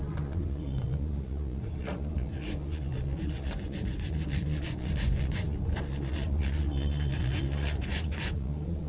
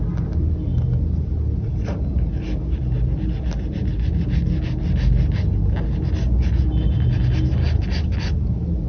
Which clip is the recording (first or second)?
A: second